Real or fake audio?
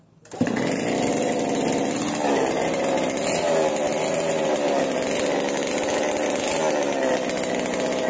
real